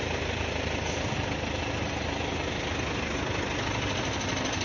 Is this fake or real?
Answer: real